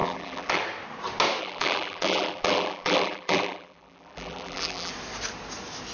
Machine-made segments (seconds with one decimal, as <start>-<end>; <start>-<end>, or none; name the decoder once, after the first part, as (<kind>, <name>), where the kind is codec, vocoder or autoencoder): 0.0-0.6 (vocoder, BigVGAN v2); 1.4-4.9